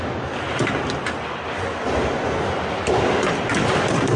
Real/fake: real